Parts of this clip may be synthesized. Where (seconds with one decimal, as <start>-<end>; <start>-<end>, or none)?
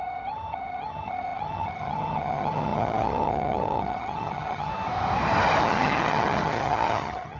0.0-4.7; 5.6-7.4